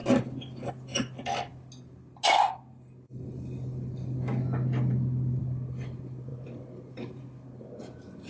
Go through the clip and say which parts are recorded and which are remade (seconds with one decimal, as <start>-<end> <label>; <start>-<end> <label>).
0.0-6.3 recorded; 6.3-7.2 remade; 7.2-8.3 recorded